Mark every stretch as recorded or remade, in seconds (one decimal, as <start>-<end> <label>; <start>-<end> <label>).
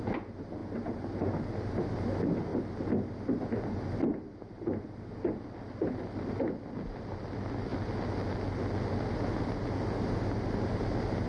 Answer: 0.0-11.3 recorded